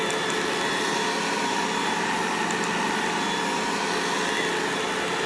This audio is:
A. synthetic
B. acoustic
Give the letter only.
B